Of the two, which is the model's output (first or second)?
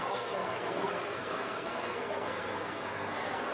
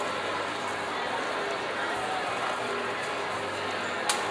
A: first